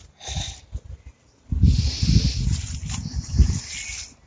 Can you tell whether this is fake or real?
real